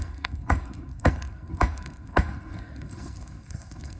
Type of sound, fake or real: fake